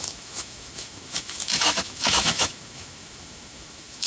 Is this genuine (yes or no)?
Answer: no